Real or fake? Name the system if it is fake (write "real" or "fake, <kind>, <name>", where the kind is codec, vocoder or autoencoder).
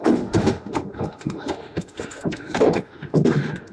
fake, autoencoder, DAC-VAE